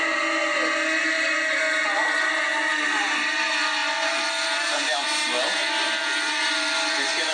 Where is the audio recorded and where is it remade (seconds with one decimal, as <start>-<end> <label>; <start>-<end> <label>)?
0.0-7.3 recorded